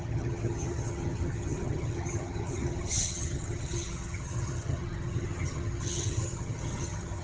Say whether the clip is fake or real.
fake